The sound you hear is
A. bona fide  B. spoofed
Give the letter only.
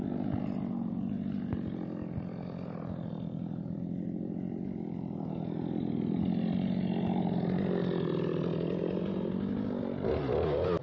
A